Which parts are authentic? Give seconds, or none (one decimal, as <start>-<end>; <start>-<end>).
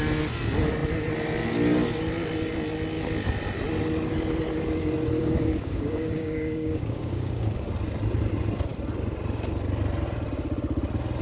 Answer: 0.0-5.2; 7.7-11.2